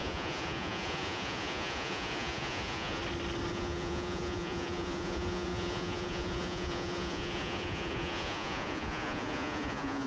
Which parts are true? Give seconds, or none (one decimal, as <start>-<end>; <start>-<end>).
3.0-3.5